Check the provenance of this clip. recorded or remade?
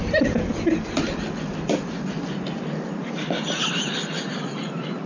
recorded